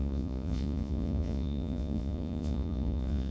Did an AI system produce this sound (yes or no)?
yes